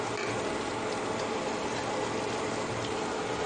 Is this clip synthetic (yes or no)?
no